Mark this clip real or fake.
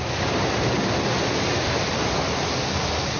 real